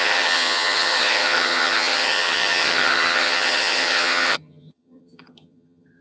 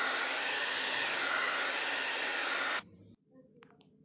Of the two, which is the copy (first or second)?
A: first